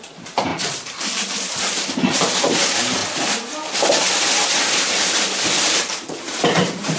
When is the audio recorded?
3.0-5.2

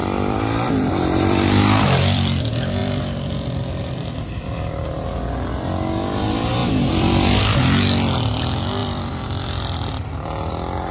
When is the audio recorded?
2.4-2.8; 4.7-6.6; 7.6-8.8; 10.5-10.9

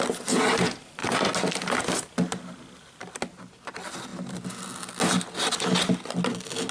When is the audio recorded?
0.0-6.7